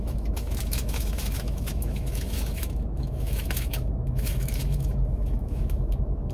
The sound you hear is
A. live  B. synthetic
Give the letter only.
B